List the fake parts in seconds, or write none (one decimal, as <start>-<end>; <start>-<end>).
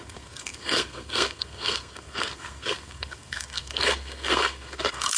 0.0-5.2